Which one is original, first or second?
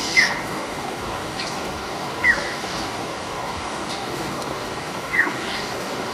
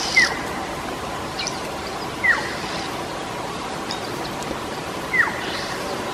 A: second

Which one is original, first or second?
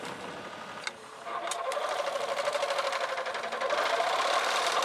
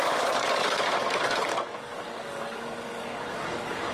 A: first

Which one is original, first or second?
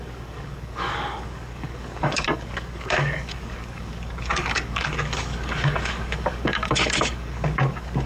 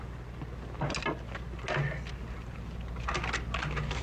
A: second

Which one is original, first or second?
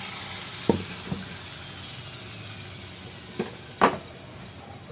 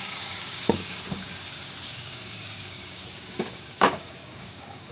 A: first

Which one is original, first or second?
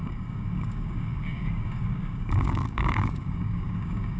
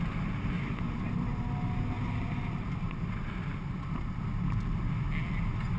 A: second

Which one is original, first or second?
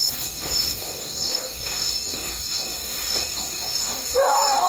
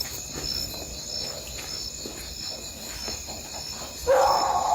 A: second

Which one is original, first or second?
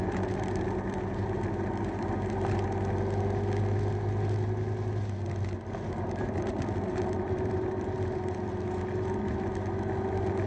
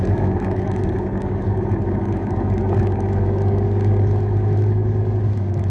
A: first